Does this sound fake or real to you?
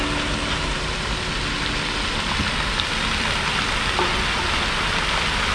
real